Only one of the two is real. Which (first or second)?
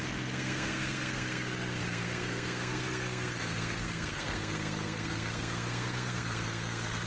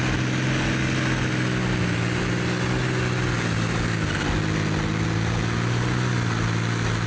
second